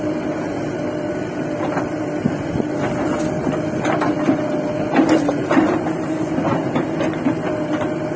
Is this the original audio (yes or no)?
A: yes